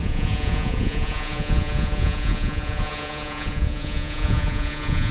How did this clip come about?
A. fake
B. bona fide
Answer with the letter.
A